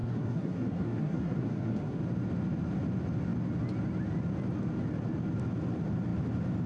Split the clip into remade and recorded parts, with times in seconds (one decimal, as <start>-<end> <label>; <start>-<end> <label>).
0.0-2.0 remade; 2.0-6.7 recorded